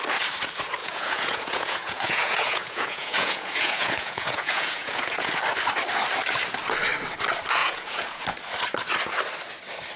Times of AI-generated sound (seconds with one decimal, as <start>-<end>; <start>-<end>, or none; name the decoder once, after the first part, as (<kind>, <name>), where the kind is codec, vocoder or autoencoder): 0.8-5.3 (vocoder, Vocos); 7.6-8.2